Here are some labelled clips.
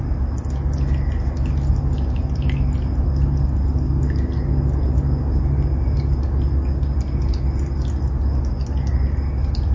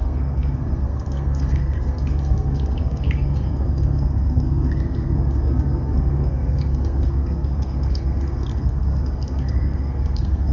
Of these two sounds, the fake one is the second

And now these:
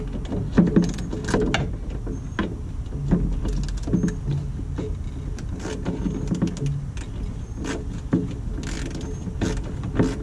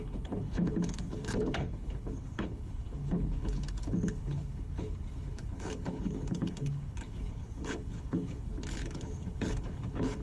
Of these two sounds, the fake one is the second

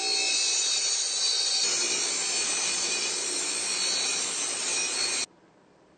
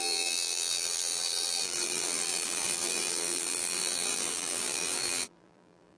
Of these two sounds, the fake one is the second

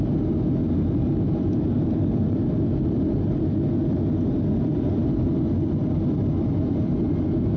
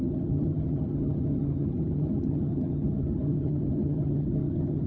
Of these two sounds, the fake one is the second